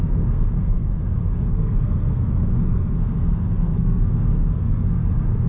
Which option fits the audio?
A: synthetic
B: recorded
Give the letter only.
A